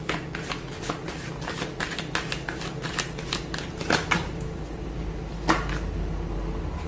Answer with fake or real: real